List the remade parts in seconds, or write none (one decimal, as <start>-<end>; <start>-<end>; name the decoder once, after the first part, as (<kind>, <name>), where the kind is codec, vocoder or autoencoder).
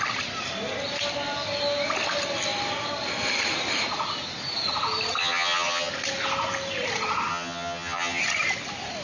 5.2-5.9 (vocoder, HiFi-GAN); 7.3-8.2